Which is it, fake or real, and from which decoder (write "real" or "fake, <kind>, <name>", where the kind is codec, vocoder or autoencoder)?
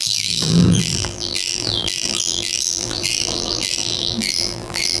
fake, vocoder, BigVGAN v2